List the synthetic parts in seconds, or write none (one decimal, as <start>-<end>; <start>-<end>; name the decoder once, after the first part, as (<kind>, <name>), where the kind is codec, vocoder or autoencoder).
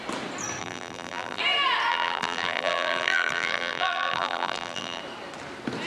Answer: 0.6-1.4 (vocoder, BigVGAN v2); 1.9-5.0